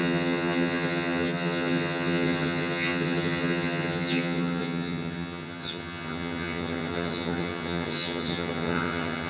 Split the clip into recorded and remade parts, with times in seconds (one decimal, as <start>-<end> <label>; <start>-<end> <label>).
0.0-9.3 remade